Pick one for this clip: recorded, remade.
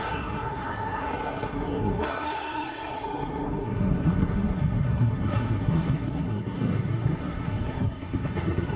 remade